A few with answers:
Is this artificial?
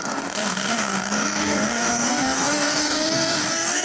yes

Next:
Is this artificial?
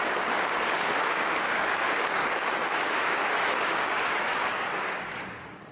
yes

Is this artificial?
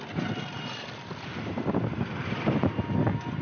no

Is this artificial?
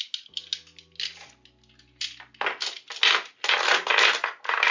no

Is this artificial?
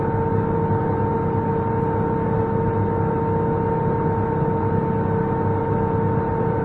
no